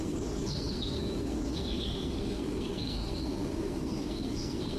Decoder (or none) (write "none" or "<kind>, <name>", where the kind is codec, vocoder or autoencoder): codec, SNAC